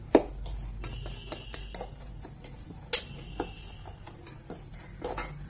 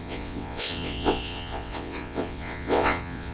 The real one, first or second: first